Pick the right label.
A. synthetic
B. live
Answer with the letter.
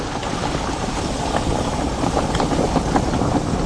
B